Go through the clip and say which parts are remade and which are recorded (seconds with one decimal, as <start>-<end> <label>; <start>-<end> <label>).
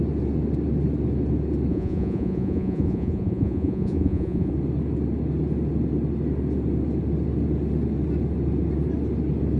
0.0-1.7 recorded; 1.7-4.5 remade; 4.5-9.6 recorded